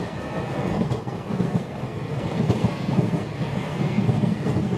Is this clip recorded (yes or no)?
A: no